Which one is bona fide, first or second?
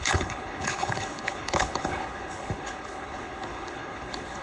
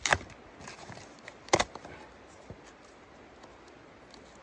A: second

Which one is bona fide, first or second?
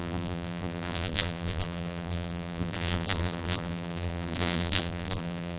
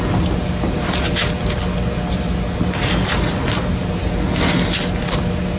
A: second